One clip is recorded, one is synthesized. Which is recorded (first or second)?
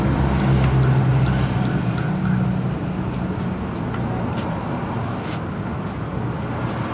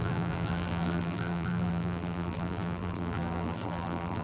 first